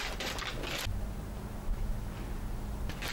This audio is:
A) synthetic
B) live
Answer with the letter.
B